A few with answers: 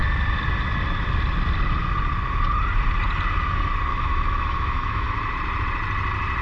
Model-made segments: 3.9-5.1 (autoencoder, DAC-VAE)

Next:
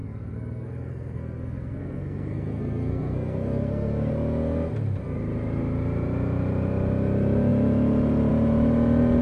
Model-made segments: 0.0-4.1 (codec, SNAC)